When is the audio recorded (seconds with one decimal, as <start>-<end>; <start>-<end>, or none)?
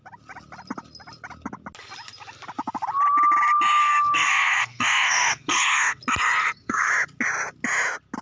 0.0-3.8; 6.0-6.4; 6.9-8.2